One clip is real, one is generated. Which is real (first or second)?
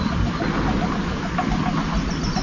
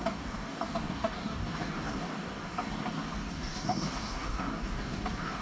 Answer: first